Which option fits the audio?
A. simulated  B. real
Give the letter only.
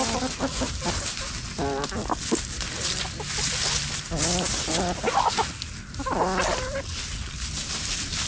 B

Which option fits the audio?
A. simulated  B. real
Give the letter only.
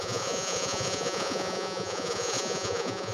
A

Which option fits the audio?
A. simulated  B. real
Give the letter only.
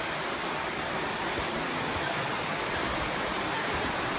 B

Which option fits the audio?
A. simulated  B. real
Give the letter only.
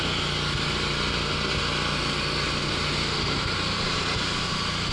B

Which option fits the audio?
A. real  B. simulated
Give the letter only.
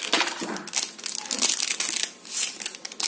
A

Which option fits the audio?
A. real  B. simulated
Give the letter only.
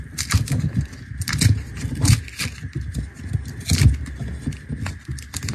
A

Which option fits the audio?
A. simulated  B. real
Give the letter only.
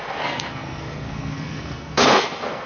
A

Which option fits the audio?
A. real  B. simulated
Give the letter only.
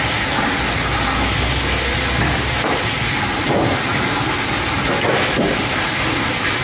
A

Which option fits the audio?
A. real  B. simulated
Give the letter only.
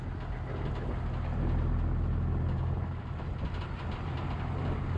A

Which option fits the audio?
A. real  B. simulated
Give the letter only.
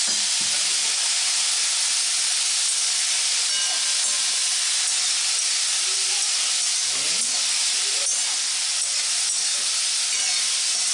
A